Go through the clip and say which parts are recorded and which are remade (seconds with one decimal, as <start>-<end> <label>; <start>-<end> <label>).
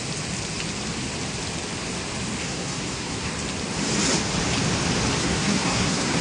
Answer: 0.0-2.4 recorded; 2.4-3.3 remade; 3.3-5.2 recorded; 5.2-6.2 remade